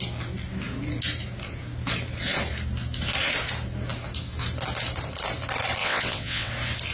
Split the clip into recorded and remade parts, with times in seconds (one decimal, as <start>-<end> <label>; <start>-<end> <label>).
0.0-5.8 recorded; 5.8-6.5 remade; 6.5-6.9 recorded

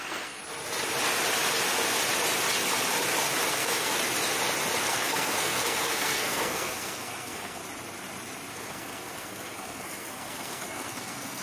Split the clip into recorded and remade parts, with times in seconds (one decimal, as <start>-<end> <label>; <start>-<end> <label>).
0.0-0.4 remade; 0.4-3.5 recorded; 3.5-4.0 remade; 4.0-4.8 recorded; 4.8-7.6 remade; 7.6-8.5 recorded; 8.5-11.4 remade

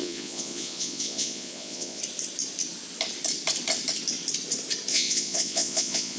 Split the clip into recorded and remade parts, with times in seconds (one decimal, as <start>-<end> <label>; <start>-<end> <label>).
0.0-2.0 remade; 2.0-4.9 recorded; 4.9-6.2 remade

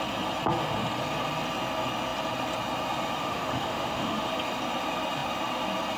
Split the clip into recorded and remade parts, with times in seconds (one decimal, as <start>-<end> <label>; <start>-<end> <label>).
0.0-3.2 recorded; 3.2-4.3 remade; 4.3-6.0 recorded